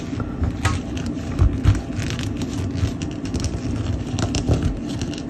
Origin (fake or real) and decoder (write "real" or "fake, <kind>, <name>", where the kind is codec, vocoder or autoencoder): real